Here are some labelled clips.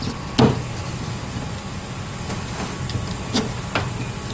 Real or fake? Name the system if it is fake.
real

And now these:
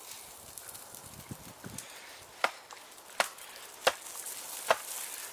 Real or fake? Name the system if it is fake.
real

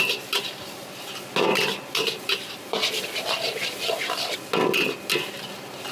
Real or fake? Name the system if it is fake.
real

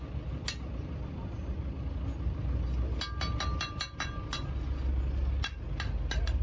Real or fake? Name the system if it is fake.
real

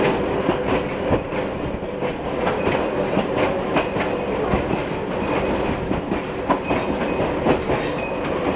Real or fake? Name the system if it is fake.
real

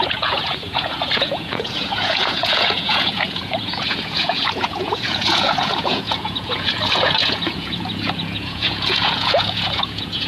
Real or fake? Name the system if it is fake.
fake, vocoder, Vocos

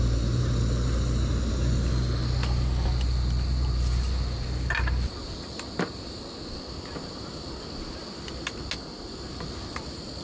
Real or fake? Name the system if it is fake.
real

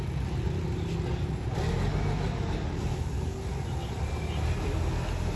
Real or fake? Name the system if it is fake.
real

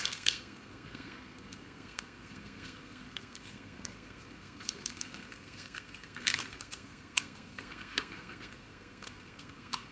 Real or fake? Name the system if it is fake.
fake, codec, SNAC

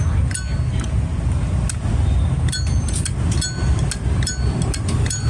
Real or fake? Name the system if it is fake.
real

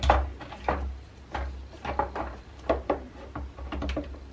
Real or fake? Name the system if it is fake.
real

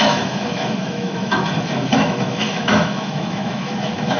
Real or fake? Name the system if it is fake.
fake, autoencoder, DAC-VAE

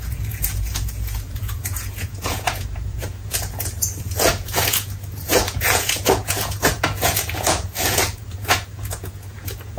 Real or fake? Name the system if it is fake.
fake, vocoder, Vocos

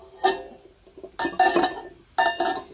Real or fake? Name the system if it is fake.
real